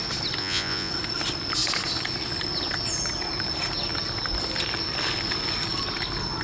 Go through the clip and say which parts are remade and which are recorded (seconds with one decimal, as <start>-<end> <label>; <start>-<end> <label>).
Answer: 0.0-0.4 recorded; 0.4-0.9 remade; 0.9-6.4 recorded